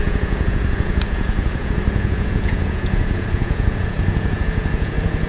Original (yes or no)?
no